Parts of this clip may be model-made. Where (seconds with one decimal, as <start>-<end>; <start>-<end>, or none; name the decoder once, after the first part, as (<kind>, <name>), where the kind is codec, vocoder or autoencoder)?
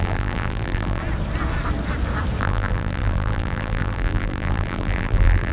0.0-1.0 (vocoder, BigVGAN v2); 2.4-5.5